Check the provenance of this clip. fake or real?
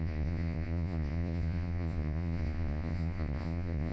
fake